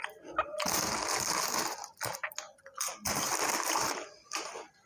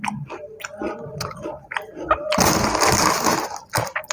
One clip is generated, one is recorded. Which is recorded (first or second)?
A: first